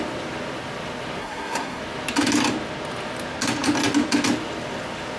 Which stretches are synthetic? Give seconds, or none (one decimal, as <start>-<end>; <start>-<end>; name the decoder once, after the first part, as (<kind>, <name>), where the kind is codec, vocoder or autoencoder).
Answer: 1.2-1.8 (codec, SNAC)